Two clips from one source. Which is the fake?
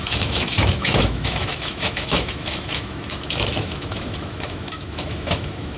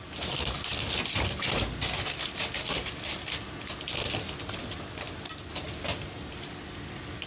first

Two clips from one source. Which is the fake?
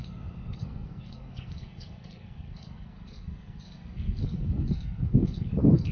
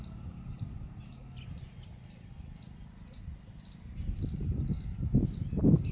first